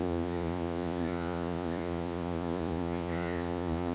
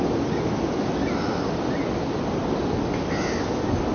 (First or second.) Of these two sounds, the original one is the second